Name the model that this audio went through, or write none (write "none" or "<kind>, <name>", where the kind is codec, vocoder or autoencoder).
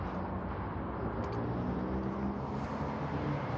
none